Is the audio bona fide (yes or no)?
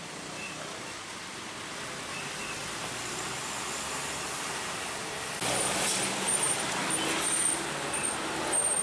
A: yes